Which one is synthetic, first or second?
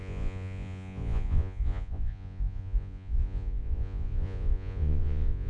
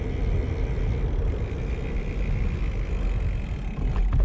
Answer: first